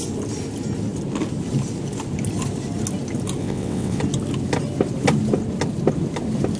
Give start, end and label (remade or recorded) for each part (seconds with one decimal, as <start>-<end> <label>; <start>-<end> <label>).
0.0-3.4 recorded; 3.4-4.0 remade; 4.0-6.6 recorded